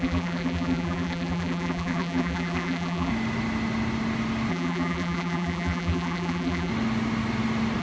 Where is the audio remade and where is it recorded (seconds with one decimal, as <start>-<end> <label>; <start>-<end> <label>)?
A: 0.0-3.1 remade; 3.1-4.5 recorded; 4.5-6.7 remade; 6.7-7.8 recorded